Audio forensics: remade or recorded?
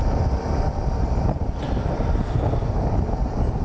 recorded